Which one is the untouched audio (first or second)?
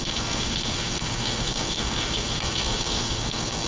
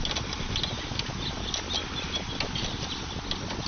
second